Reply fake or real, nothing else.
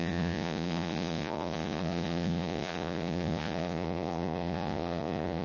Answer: fake